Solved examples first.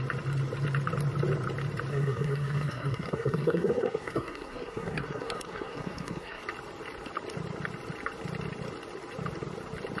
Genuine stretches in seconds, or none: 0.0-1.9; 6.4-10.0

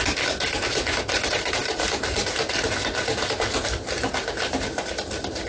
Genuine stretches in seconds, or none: 0.0-1.6; 2.7-5.5

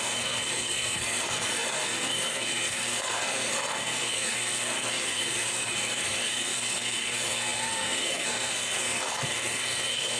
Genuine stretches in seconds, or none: none

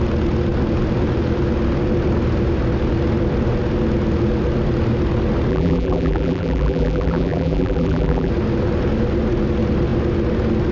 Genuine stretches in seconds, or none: 0.0-5.5; 8.3-10.7

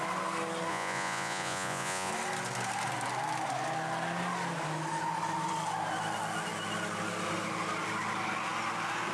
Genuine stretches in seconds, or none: 0.0-0.7; 2.1-9.1

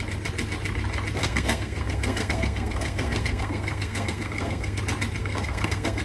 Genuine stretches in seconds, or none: 0.0-1.2; 4.8-5.2

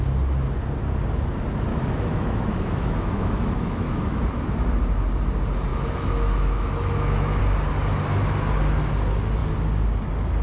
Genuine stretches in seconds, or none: 0.0-1.7; 4.2-5.7; 7.4-10.4